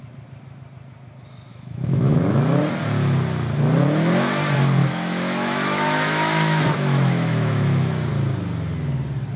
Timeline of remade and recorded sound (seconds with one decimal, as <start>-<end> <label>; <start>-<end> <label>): 0.0-1.5 recorded; 1.5-2.6 remade; 2.6-4.8 recorded; 4.8-8.1 remade; 8.1-9.4 recorded